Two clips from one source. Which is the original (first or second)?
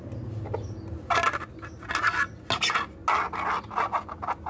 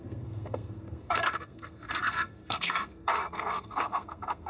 first